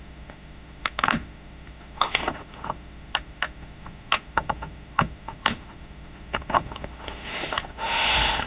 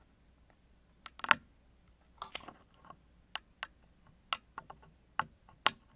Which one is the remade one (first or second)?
first